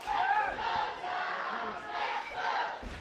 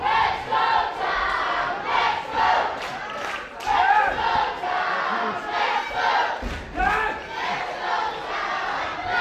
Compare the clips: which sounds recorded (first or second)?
second